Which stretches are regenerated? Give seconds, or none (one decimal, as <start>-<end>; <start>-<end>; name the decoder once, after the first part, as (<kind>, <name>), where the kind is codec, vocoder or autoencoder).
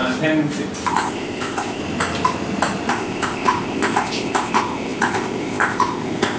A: 0.9-1.8 (codec, ZipCodec); 2.9-6.4